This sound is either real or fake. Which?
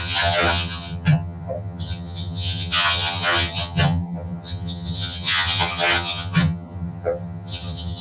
fake